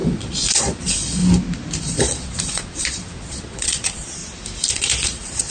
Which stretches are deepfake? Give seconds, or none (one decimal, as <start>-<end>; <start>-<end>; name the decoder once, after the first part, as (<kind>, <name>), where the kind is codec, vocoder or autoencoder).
0.0-1.2 (vocoder, Vocos); 1.8-4.2; 4.7-5.5